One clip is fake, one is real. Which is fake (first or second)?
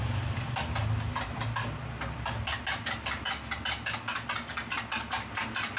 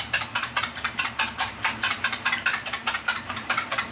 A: second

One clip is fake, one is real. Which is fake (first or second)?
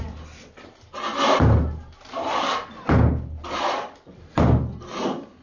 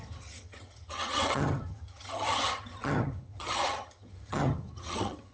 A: second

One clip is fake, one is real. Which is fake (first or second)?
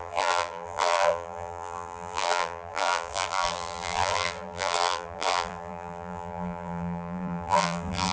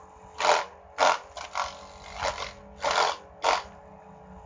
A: first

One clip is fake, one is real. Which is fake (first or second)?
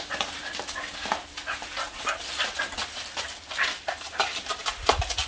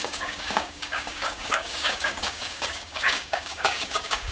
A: second